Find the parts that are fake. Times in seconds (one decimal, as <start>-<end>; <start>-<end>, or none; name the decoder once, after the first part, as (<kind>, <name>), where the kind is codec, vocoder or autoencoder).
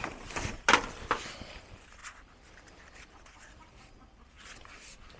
none